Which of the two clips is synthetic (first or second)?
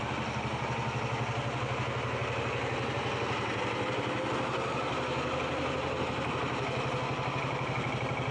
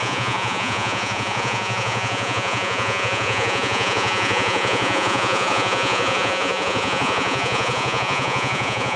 second